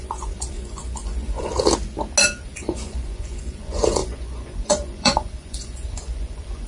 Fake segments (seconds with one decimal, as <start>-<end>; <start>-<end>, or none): 0.0-1.5; 2.4-6.7

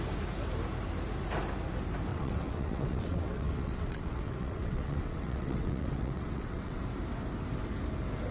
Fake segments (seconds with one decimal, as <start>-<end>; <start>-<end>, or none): 2.1-6.8